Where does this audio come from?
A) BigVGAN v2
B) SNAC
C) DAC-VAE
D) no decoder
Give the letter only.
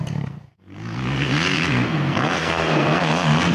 B